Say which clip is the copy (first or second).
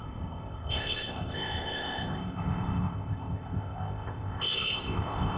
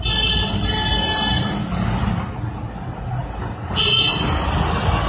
first